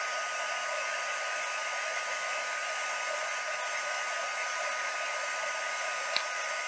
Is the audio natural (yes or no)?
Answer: yes